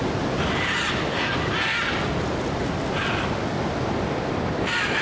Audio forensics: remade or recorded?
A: recorded